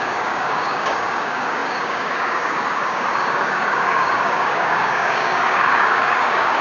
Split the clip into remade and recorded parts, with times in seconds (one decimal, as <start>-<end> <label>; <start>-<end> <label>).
0.0-6.6 remade